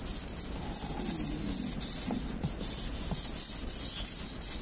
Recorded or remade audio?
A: recorded